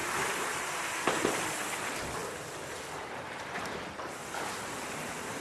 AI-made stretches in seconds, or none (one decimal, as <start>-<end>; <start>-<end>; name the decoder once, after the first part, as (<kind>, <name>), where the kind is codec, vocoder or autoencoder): 0.0-0.9 (vocoder, BigVGAN v2); 2.2-3.8